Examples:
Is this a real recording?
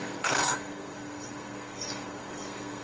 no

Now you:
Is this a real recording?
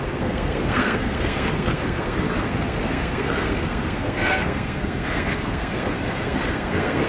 no